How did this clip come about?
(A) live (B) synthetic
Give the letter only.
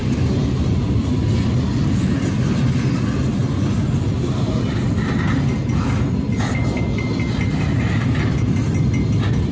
A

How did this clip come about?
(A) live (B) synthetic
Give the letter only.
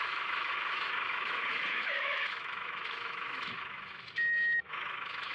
B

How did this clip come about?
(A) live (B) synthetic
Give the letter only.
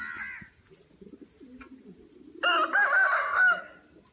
A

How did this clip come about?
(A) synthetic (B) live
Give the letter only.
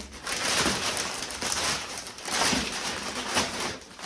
A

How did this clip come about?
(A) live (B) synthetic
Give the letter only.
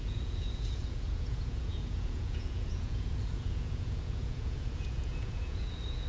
B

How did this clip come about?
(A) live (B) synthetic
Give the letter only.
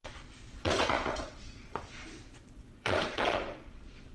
B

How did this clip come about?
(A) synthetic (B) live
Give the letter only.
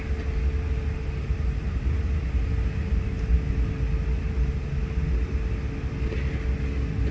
B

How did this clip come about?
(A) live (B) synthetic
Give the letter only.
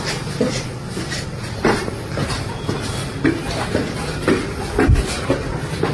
A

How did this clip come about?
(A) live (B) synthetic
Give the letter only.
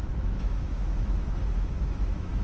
B